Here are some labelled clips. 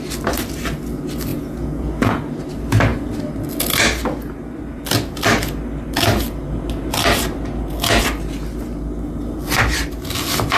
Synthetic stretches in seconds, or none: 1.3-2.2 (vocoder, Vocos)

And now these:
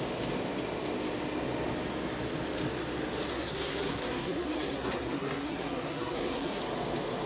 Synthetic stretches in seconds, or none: 3.3-6.6 (codec, SNAC)

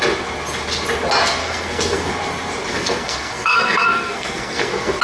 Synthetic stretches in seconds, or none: 1.4-2.1 (codec, SNAC); 2.7-5.0